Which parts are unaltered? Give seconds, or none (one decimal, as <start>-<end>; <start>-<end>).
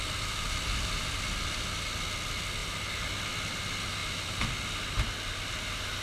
0.0-6.0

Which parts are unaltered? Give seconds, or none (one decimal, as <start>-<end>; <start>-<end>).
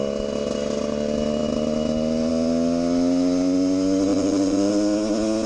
0.0-4.1; 4.7-5.5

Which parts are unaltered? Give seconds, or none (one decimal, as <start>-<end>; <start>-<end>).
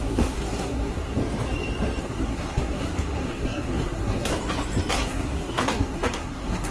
1.2-2.0; 4.3-4.9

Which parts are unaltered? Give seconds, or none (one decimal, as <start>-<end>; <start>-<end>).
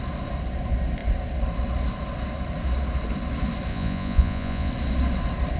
0.0-3.7; 4.7-5.6